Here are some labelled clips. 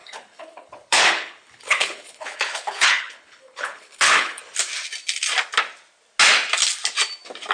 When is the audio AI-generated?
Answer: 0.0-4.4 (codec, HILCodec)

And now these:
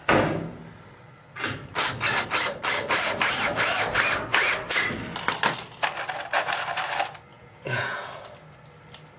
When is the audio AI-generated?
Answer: 7.3-8.2 (vocoder, Vocos)

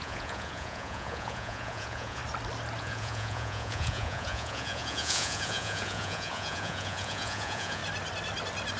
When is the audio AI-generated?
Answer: 0.0-2.2 (vocoder, Vocos); 2.8-7.8

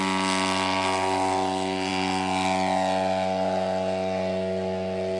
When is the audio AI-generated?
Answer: none

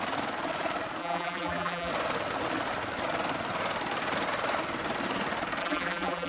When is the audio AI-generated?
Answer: 1.0-1.9 (vocoder, BigVGAN v2); 5.6-6.3

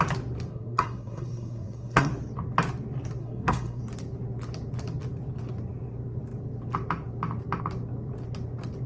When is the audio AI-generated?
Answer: 0.5-2.1 (codec, SNAC); 3.2-3.8